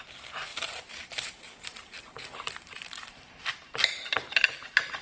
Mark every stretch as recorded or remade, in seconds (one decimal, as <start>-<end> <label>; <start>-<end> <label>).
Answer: 0.0-0.5 recorded; 0.5-3.5 remade; 3.5-5.0 recorded